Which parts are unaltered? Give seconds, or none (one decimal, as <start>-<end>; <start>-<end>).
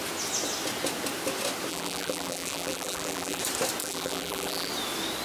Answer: 0.0-1.7; 3.4-3.8; 4.7-5.2